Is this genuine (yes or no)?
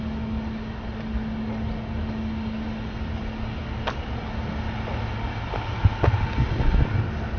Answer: yes